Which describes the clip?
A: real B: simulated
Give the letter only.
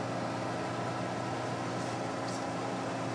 A